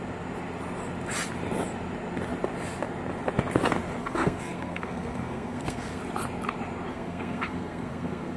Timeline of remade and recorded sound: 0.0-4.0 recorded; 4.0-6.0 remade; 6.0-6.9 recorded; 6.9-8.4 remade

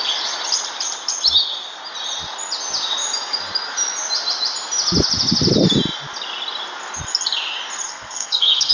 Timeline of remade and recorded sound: 0.0-7.9 recorded; 7.9-8.7 remade

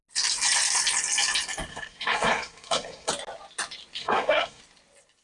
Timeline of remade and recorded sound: 0.0-1.7 recorded; 1.7-3.1 remade; 3.1-4.0 recorded; 4.0-4.6 remade; 4.6-5.2 recorded

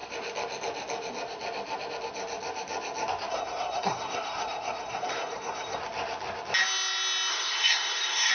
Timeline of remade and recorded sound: 0.0-3.3 recorded; 3.3-5.8 remade; 5.8-7.3 recorded; 7.3-8.3 remade

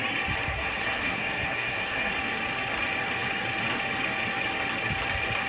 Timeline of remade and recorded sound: 0.0-0.5 recorded; 0.5-2.1 remade; 2.1-5.5 recorded

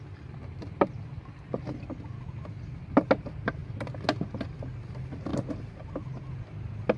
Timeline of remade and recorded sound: 0.0-7.0 recorded

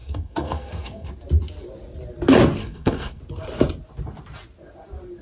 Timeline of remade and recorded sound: 0.0-1.1 remade; 1.1-2.6 recorded; 2.6-3.2 remade; 3.2-5.2 recorded

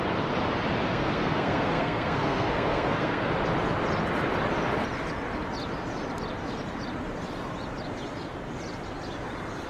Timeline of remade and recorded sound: 0.0-0.9 recorded; 0.9-3.3 remade; 3.3-9.7 recorded